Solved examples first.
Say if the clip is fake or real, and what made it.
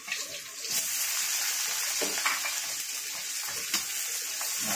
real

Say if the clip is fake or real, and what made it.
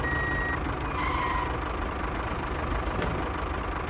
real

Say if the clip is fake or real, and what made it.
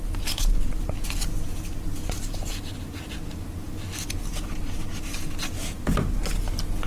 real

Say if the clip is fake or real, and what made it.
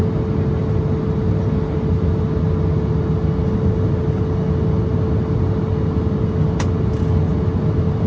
real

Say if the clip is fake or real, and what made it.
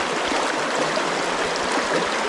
real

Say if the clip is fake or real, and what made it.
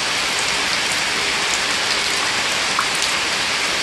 real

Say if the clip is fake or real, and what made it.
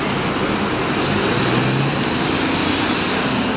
real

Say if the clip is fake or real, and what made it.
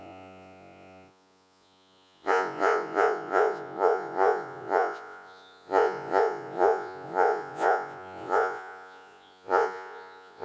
fake, vocoder, Vocos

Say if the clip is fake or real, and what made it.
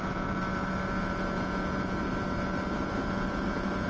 fake, vocoder, Vocos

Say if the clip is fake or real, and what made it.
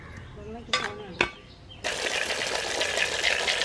real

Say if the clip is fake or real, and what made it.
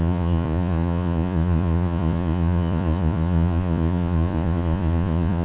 fake, vocoder, Vocos